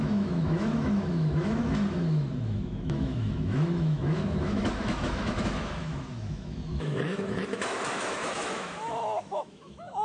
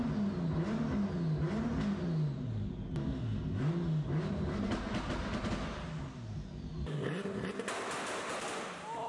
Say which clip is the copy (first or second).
first